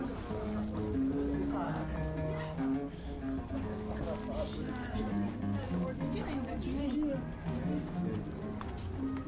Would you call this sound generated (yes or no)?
no